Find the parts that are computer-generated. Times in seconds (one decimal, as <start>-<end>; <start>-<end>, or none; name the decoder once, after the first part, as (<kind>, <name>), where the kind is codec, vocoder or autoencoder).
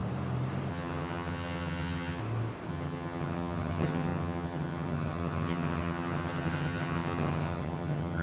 0.7-2.2 (vocoder, HiFi-GAN); 2.7-8.2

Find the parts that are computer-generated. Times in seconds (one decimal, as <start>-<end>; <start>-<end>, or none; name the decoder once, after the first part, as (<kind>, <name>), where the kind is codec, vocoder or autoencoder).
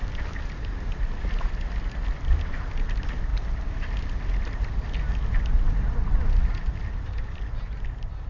none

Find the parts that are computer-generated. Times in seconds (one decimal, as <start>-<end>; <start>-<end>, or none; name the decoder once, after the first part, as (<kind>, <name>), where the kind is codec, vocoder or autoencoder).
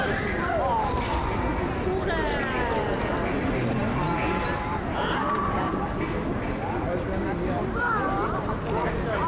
none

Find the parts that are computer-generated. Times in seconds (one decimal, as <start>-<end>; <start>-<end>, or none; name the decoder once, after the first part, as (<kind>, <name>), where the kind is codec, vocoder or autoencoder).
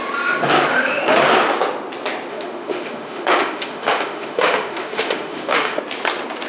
0.7-1.2 (autoencoder, DAC-VAE); 2.3-5.8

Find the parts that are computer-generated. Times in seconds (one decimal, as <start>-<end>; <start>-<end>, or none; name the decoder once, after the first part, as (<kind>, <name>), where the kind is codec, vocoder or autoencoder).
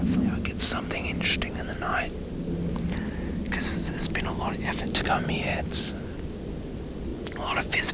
7.1-7.9 (vocoder, Vocos)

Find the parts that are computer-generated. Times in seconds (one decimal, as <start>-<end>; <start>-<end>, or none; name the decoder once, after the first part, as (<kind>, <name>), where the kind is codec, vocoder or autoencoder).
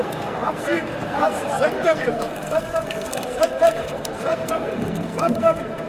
0.0-5.9 (codec, SNAC)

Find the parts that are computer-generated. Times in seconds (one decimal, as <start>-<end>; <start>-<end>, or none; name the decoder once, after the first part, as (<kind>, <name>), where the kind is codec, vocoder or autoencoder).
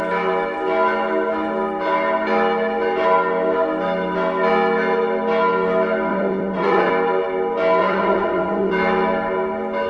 6.1-6.9 (vocoder, WaveNeXt); 7.8-8.7